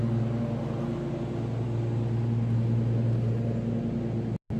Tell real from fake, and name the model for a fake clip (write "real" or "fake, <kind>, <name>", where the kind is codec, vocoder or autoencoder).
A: real